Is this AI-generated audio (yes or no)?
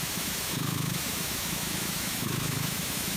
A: yes